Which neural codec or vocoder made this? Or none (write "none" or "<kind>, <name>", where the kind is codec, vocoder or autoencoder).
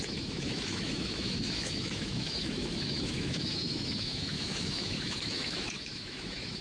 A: autoencoder, DAC-VAE